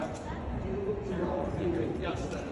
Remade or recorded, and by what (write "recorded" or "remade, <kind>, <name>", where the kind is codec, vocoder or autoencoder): remade, vocoder, Vocos